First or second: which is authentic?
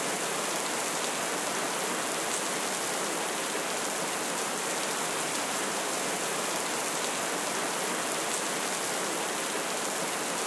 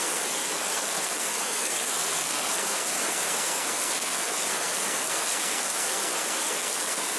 first